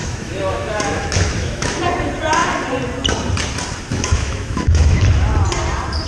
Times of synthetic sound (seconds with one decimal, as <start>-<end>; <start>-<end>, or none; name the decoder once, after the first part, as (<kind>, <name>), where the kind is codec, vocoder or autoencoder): 0.0-1.8 (autoencoder, DAC-VAE); 3.9-5.0

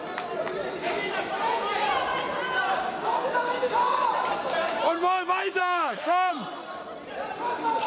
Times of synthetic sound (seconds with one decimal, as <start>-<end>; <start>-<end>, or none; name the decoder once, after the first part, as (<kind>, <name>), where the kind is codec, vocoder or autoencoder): 5.6-6.3 (autoencoder, DAC-VAE)

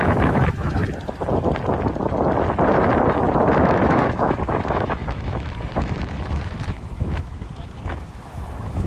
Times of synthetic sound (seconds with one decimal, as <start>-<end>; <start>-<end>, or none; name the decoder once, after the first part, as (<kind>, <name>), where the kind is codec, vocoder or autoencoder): 0.0-0.8 (autoencoder, DAC-VAE); 3.6-8.9

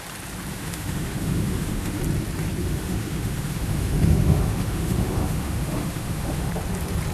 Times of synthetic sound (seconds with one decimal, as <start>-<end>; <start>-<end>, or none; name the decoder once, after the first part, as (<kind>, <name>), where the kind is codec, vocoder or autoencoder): 0.5-2.0 (autoencoder, DAC-VAE); 2.6-6.5

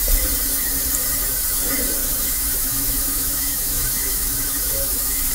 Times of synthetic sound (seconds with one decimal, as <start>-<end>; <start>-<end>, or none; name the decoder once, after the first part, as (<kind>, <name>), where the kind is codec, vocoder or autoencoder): 2.0-5.3 (autoencoder, DAC-VAE)